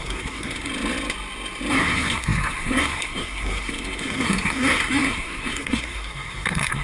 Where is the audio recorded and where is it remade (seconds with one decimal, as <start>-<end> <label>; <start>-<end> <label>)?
0.0-0.7 remade; 0.7-1.7 recorded; 1.7-6.8 remade